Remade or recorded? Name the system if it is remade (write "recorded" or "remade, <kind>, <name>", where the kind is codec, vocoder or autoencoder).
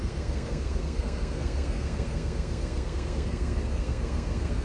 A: remade, codec, SNAC